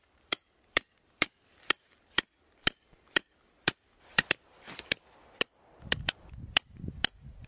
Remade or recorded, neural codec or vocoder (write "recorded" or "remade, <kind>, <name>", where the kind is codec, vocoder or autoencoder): remade, vocoder, BigVGAN v2